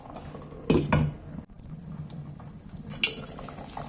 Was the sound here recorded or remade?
recorded